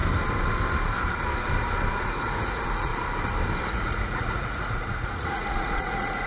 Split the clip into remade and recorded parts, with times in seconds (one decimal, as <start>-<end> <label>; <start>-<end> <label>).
0.0-1.9 recorded; 1.9-2.9 remade; 2.9-3.7 recorded; 3.7-6.3 remade